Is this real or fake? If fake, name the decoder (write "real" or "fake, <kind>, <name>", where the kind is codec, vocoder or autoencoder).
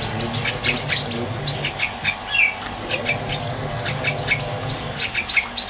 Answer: real